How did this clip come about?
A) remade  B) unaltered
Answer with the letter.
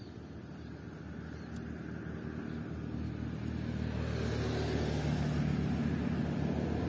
B